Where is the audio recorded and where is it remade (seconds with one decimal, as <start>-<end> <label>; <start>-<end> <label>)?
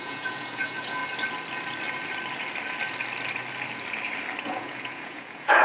0.0-1.0 remade; 1.0-4.4 recorded; 4.4-5.6 remade